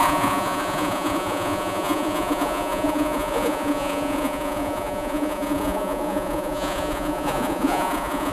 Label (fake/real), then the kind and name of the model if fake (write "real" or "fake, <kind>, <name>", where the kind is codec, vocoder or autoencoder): fake, vocoder, Vocos